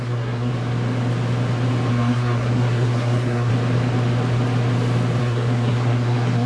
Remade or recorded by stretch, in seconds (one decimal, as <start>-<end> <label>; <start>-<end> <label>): 0.0-0.5 remade; 0.5-1.9 recorded; 1.9-3.5 remade; 3.5-5.2 recorded; 5.2-6.5 remade